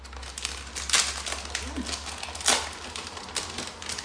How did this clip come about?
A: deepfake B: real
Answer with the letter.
B